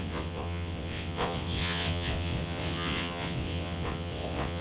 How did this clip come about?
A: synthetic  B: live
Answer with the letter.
A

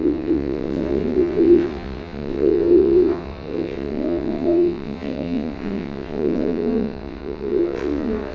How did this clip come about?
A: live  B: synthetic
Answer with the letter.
B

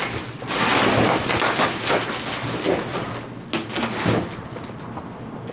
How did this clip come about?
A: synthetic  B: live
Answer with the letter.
B